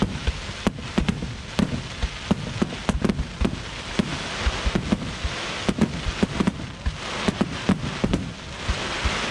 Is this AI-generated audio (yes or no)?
no